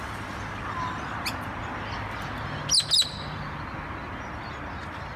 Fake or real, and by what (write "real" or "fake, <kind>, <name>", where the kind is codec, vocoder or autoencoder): real